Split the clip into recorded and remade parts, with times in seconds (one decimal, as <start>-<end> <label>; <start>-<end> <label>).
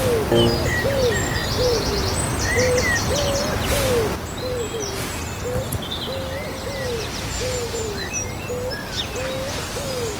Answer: 0.0-10.2 recorded